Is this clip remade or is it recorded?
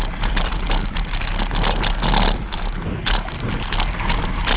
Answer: recorded